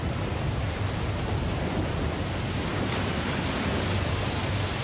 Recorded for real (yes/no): yes